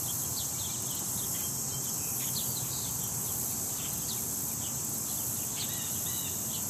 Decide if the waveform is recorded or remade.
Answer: recorded